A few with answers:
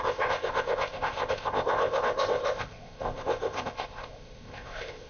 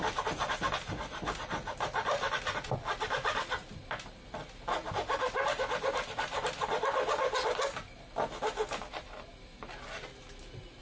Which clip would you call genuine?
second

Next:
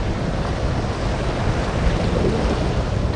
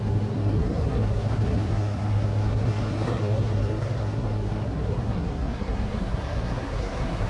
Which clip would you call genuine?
first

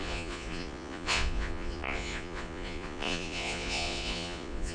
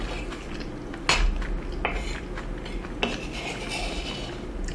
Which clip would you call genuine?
second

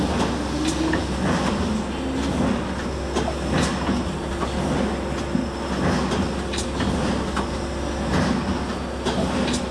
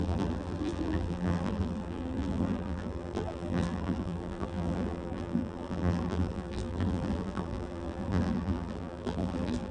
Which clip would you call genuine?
first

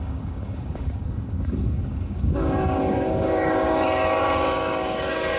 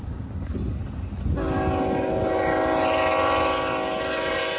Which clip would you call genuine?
second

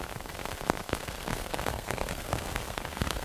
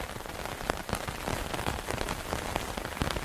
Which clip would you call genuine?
second